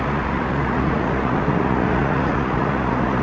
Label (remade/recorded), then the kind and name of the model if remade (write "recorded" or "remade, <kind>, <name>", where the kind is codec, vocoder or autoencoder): remade, vocoder, Vocos